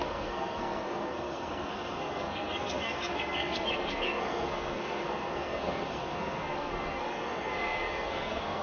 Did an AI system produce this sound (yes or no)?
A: yes